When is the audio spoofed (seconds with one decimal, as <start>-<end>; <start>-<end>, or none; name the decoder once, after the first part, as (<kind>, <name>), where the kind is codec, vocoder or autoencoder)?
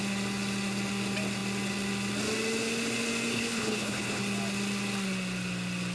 3.3-4.2 (codec, HILCodec)